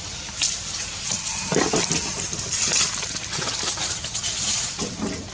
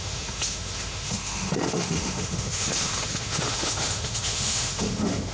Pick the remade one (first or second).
second